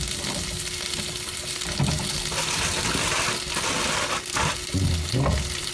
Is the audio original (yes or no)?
yes